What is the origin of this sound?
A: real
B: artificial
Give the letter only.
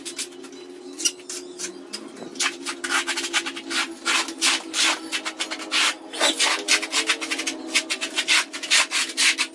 A